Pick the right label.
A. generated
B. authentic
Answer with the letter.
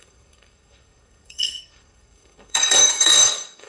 A